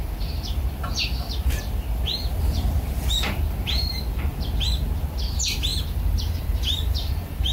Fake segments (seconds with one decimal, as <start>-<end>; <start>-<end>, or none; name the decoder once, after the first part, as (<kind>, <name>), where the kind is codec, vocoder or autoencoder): 0.0-5.7 (vocoder, BigVGAN v2); 6.4-7.5